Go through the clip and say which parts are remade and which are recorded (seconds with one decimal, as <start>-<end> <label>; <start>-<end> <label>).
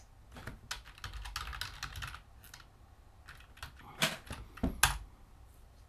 0.0-5.9 recorded